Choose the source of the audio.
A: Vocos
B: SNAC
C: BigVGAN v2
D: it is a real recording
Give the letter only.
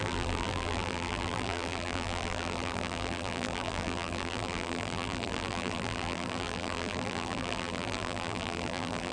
C